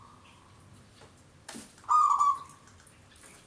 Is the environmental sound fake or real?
real